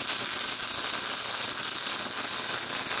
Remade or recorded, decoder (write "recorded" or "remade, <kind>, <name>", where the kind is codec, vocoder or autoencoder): recorded